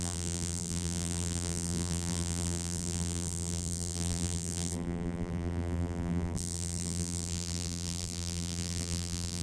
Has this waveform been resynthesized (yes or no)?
yes